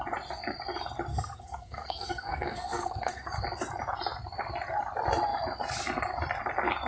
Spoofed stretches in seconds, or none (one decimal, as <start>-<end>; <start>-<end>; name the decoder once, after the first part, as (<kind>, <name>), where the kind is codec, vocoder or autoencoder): 1.1-3.3 (codec, SNAC)